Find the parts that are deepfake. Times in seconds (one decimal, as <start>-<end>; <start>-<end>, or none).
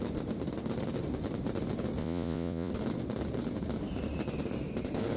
2.0-2.7